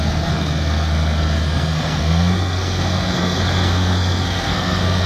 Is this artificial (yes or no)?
yes